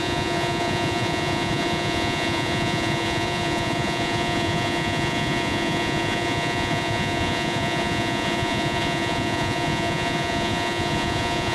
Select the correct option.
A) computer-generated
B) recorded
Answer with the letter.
A